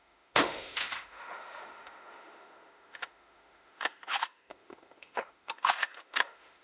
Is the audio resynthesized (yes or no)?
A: yes